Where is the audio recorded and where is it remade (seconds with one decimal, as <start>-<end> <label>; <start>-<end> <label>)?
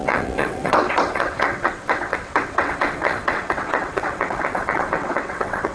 0.0-5.7 remade